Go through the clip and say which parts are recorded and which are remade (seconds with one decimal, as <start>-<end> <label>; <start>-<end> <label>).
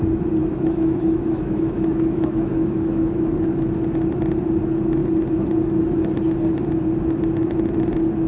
0.0-0.4 recorded; 0.4-3.1 remade; 3.1-8.3 recorded